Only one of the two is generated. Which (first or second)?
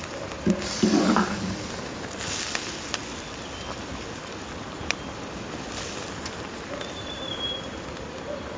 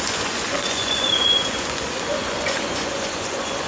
second